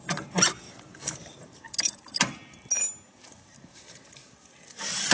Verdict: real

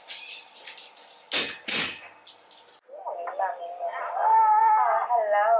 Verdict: real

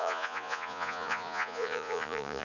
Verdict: fake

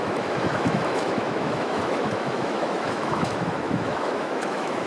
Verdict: fake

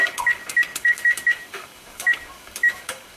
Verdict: fake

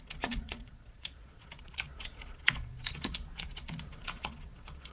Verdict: fake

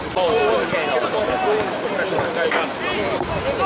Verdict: real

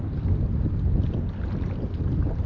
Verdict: real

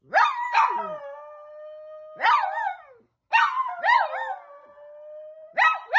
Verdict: real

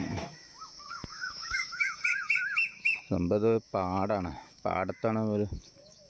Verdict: fake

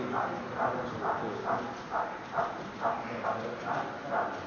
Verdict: real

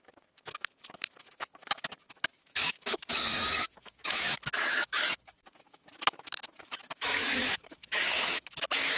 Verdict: fake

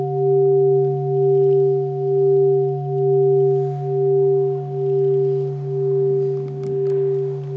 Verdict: real